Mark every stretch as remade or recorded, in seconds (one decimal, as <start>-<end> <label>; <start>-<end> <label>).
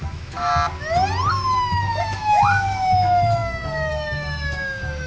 0.0-0.5 remade; 0.5-1.3 recorded; 1.3-5.1 remade